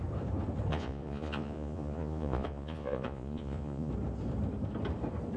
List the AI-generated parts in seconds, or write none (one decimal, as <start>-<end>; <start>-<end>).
0.7-3.9